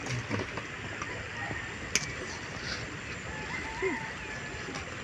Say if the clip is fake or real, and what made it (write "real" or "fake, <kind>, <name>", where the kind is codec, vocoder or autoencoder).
real